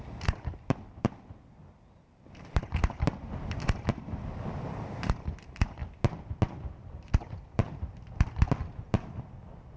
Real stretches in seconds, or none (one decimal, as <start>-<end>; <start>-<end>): 5.8-6.8